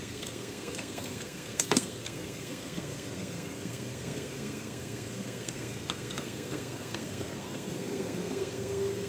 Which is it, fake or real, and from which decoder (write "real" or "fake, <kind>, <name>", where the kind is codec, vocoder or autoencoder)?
fake, codec, SNAC